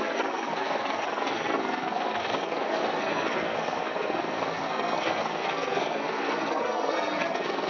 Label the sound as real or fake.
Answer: fake